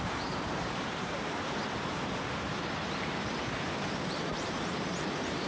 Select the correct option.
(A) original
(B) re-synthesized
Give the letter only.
B